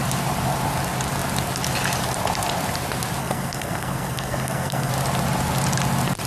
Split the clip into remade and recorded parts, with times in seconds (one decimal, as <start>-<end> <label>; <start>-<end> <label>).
0.0-3.2 recorded; 3.2-4.9 remade; 4.9-6.3 recorded